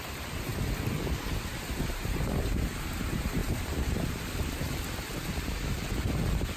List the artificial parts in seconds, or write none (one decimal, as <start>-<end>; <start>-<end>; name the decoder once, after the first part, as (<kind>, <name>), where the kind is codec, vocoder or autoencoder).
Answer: 0.0-0.5 (vocoder, BigVGAN v2); 1.7-6.6